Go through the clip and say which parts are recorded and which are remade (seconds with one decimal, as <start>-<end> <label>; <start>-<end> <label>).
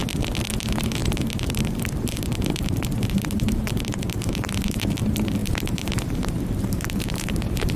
0.0-0.6 recorded; 0.6-7.8 remade